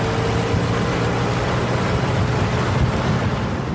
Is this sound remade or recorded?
recorded